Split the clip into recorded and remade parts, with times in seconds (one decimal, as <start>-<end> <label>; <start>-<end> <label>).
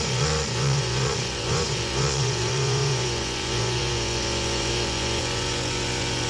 0.0-6.3 remade